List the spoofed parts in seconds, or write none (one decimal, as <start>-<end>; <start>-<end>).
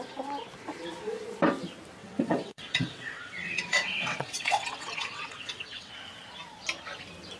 2.0-5.9